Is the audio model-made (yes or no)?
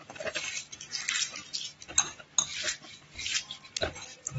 no